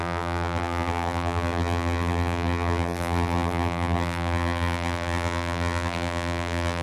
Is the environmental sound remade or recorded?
remade